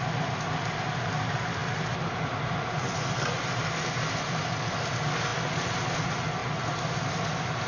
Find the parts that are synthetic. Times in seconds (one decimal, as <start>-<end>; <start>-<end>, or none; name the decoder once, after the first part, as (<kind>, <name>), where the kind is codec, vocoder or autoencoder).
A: none